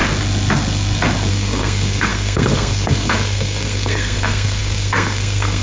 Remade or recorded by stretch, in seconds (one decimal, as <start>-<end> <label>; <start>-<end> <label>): 0.0-1.3 recorded; 1.3-5.6 remade